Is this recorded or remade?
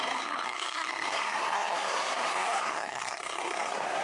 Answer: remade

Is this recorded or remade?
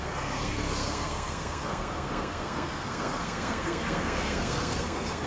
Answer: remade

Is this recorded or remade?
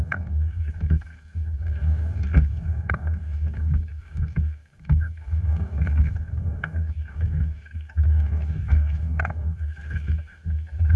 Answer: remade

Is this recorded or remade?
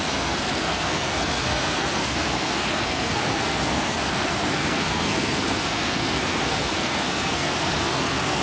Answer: remade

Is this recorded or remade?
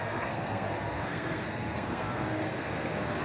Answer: remade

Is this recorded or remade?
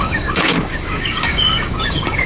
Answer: remade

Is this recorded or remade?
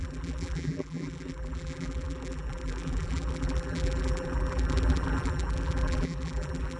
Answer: remade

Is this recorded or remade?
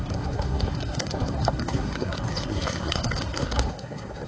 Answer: remade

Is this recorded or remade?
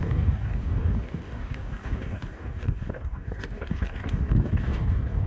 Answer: remade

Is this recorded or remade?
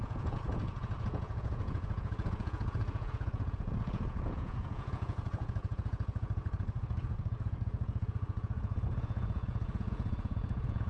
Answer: remade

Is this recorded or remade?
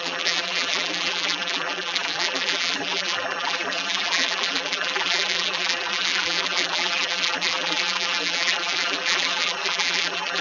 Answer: remade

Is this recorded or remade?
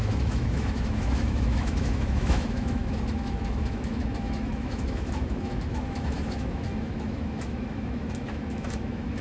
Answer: remade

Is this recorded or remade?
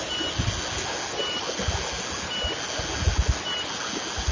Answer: recorded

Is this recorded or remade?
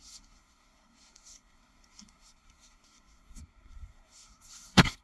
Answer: remade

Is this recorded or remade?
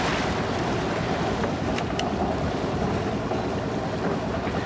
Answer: recorded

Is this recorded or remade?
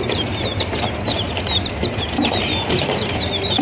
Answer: remade